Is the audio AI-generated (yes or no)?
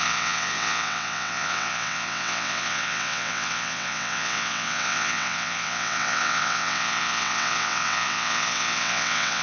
yes